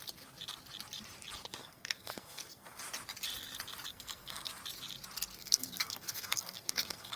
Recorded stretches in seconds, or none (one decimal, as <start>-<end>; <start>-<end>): 0.0-1.6; 2.8-3.9; 4.5-5.4